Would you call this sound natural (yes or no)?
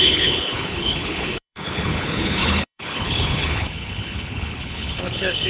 no